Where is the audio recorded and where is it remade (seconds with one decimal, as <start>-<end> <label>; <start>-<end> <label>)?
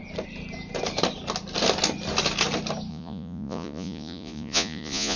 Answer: 0.0-2.9 recorded; 2.9-5.2 remade